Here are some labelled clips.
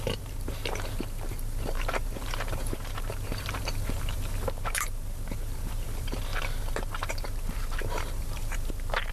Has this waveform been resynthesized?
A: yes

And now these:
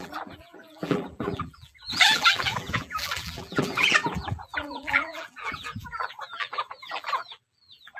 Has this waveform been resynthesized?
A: yes